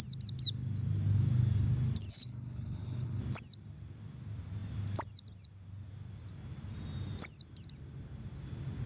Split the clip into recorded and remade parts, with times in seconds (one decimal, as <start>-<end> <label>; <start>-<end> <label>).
0.0-2.1 recorded; 2.1-3.2 remade; 3.2-8.9 recorded